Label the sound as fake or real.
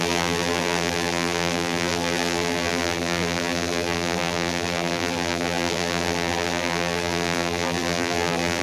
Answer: fake